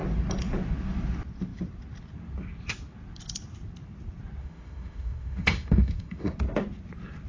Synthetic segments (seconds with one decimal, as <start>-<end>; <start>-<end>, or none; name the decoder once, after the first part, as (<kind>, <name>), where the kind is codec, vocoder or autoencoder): 4.4-6.3 (autoencoder, DAC-VAE)